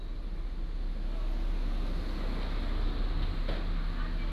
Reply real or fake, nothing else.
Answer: real